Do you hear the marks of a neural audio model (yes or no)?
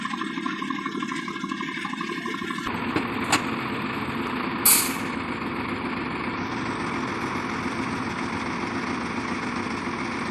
no